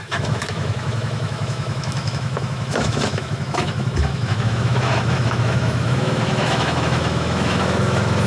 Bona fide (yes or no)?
no